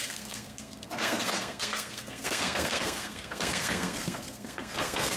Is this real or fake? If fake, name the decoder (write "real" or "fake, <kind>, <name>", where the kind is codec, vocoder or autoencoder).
fake, codec, SNAC